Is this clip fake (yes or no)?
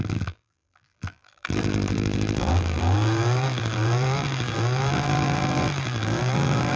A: yes